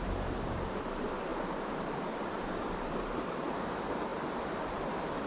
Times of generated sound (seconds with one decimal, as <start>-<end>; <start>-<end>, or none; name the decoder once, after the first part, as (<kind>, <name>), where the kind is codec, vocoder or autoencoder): 0.0-5.3 (vocoder, BigVGAN v2)